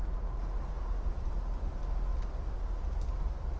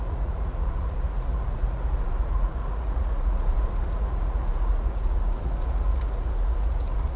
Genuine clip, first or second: first